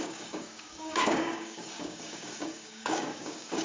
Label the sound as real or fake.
fake